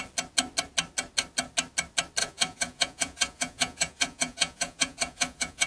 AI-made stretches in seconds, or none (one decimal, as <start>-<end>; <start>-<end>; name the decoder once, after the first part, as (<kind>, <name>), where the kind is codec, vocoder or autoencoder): 2.2-5.7 (vocoder, Vocos)